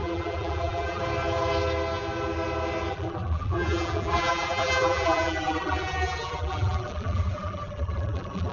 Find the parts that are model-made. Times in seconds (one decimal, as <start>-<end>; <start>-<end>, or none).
0.0-1.0; 2.9-8.5